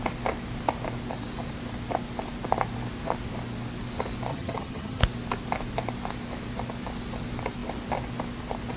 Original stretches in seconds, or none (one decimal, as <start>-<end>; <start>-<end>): 0.0-4.3; 5.0-8.8